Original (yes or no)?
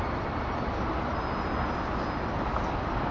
yes